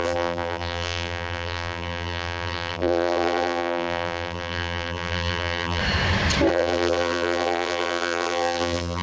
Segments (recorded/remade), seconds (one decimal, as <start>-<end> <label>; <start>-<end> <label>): 0.0-5.8 remade; 5.8-6.5 recorded; 6.5-9.0 remade